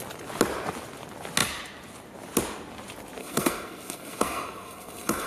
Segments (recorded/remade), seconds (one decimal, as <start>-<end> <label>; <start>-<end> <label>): 0.0-3.2 recorded; 3.2-5.3 remade